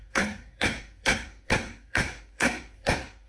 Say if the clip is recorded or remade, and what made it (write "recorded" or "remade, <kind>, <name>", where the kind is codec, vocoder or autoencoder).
remade, codec, SNAC